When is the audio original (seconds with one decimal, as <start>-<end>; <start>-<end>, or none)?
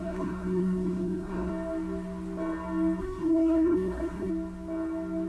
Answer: 1.5-3.0; 4.3-5.3